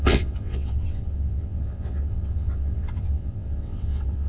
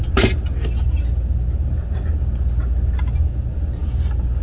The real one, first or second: second